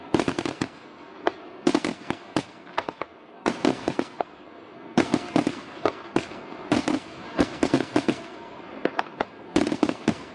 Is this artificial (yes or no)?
yes